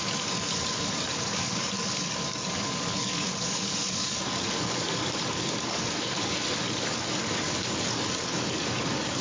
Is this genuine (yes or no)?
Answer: no